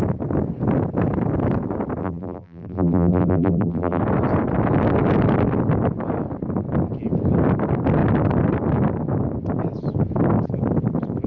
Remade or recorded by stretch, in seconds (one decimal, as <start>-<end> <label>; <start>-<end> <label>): 0.0-2.0 recorded; 2.0-4.0 remade; 4.0-11.3 recorded